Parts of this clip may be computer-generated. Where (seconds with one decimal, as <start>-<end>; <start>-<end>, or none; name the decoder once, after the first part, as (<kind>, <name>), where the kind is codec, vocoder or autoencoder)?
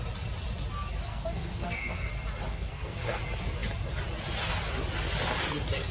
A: 1.1-2.1 (codec, SNAC); 2.5-3.2